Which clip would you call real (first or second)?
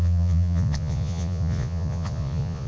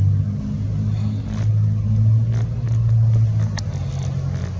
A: second